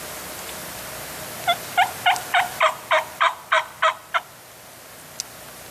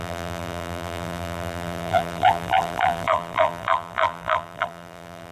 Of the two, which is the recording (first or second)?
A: first